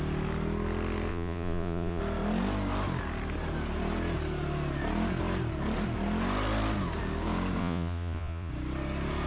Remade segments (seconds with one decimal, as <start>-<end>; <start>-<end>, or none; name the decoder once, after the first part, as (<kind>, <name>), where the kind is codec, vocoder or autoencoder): 1.1-2.0 (vocoder, Vocos); 7.6-8.5